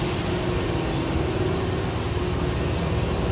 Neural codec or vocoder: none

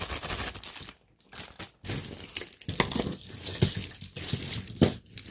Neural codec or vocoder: none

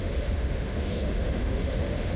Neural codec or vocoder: autoencoder, DAC-VAE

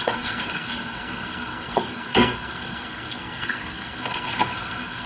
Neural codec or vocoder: codec, SNAC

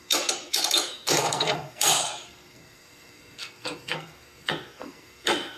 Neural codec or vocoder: codec, SNAC